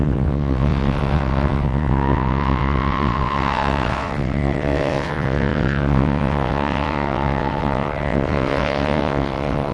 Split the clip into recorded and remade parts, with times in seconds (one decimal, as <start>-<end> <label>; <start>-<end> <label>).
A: 0.0-9.7 remade